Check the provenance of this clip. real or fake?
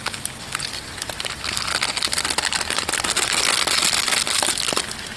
real